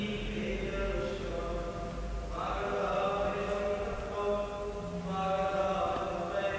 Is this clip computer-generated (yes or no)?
no